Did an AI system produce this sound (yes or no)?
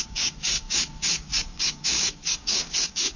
yes